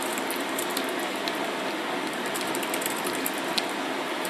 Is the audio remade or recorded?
recorded